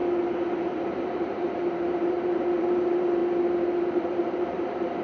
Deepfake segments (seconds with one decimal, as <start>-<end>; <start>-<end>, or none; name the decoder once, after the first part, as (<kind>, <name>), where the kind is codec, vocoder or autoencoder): 0.6-3.2 (vocoder, BigVGAN v2); 3.8-5.0

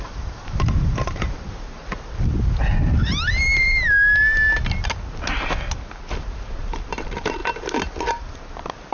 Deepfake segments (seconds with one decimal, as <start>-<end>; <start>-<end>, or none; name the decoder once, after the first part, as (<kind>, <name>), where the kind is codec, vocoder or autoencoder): 0.0-1.8 (vocoder, BigVGAN v2); 6.6-7.4; 8.1-8.9

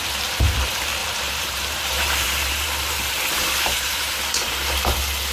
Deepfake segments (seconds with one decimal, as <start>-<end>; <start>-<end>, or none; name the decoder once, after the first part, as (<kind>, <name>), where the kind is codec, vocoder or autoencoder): 1.0-4.2 (vocoder, BigVGAN v2)

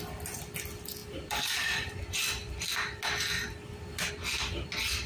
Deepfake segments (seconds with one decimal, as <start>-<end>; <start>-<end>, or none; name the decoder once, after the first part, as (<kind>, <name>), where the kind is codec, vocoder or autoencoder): none

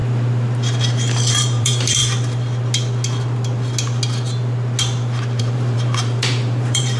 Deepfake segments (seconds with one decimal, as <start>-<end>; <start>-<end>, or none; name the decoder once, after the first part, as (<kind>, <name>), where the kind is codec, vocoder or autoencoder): 1.3-2.0 (vocoder, BigVGAN v2); 5.4-7.0

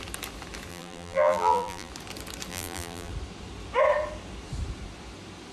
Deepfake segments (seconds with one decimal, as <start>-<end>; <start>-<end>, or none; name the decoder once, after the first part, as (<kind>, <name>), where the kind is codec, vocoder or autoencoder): 0.7-1.9 (vocoder, BigVGAN v2); 2.5-3.1

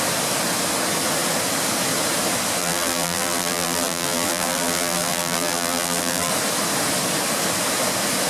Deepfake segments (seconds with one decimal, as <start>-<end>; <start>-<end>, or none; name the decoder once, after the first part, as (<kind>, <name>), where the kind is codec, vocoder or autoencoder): 2.6-6.3 (vocoder, BigVGAN v2)

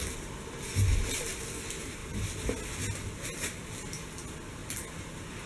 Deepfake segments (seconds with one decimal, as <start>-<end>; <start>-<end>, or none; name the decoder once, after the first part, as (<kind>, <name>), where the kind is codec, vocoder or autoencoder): none